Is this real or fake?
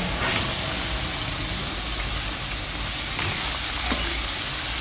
real